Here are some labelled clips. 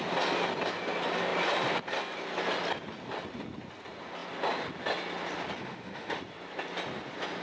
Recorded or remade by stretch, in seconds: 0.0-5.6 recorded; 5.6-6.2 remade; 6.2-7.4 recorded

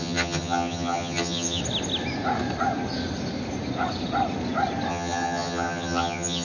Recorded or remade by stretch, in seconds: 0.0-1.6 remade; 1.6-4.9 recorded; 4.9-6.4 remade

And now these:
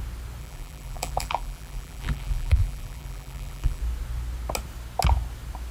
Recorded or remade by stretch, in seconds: 0.0-0.4 recorded; 0.4-3.8 remade; 3.8-5.7 recorded